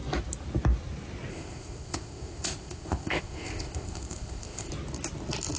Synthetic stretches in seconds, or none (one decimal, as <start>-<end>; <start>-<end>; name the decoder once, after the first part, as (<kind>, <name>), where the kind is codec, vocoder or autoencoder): 1.3-4.7 (codec, ZipCodec)